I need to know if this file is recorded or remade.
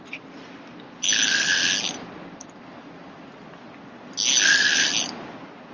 recorded